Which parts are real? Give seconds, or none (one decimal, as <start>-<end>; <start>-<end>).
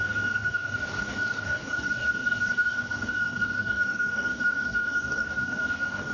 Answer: none